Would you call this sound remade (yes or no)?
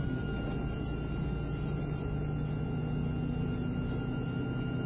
no